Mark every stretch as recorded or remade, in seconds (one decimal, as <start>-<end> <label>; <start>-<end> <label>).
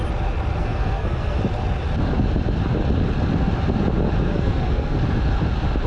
0.0-0.6 recorded; 0.6-1.4 remade; 1.4-4.3 recorded; 4.3-5.0 remade; 5.0-5.9 recorded